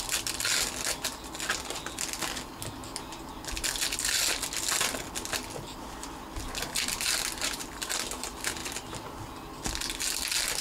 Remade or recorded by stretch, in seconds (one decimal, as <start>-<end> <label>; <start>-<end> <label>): 0.0-10.6 recorded